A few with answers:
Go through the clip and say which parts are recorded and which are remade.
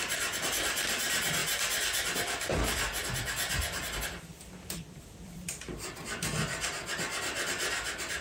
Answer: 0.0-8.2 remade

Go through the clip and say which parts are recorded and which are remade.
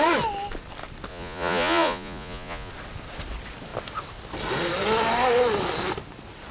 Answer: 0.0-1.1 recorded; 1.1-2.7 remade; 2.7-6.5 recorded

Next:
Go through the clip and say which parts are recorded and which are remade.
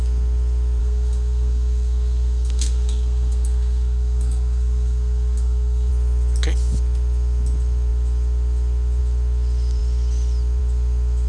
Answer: 0.0-0.8 recorded; 0.8-5.9 remade; 5.9-11.3 recorded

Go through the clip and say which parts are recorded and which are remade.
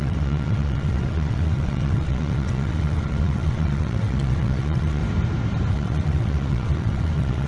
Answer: 0.0-5.0 remade; 5.0-5.7 recorded; 5.7-7.5 remade